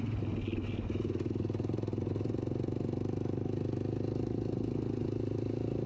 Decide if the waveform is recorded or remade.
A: recorded